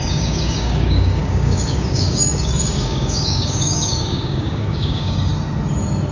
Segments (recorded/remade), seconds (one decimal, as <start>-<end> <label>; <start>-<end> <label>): 0.0-5.3 remade; 5.3-6.1 recorded